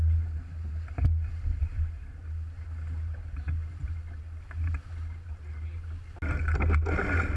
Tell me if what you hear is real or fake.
real